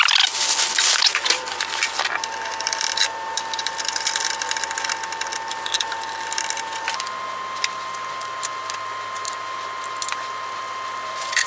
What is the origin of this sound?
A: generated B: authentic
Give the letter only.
B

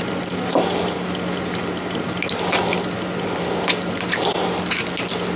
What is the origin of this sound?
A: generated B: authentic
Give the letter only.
B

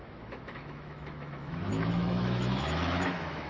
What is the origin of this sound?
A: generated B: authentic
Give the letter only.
A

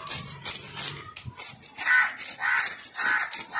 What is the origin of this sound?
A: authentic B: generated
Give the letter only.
A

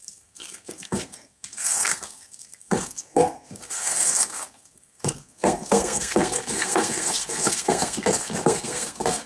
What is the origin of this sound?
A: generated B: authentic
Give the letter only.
A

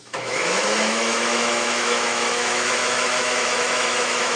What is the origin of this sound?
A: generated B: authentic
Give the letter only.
A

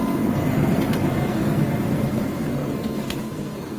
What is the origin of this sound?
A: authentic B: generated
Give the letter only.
B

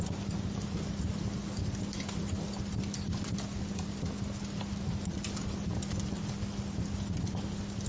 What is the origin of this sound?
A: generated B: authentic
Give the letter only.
B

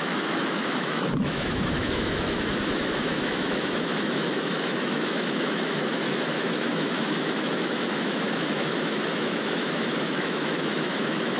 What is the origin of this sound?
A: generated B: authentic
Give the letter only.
A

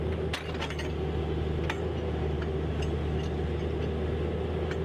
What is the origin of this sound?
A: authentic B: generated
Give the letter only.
A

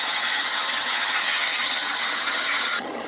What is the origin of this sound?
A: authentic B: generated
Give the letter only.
B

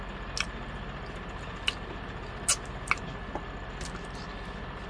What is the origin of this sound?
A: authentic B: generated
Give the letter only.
A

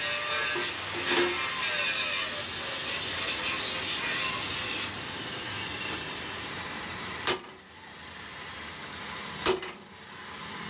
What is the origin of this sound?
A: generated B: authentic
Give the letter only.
B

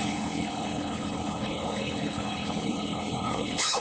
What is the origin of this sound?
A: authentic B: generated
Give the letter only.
B